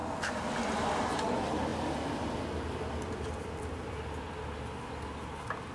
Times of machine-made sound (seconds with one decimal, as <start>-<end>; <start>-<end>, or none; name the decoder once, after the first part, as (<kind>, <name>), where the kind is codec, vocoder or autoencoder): none